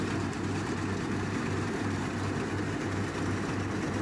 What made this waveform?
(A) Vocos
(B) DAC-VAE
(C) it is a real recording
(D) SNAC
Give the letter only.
C